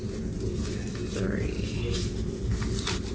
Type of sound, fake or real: real